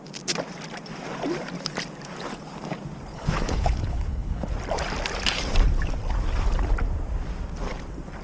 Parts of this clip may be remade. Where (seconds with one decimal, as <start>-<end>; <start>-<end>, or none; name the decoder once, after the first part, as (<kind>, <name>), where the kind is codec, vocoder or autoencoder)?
3.1-4.5 (codec, HILCodec)